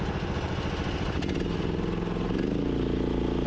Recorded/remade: recorded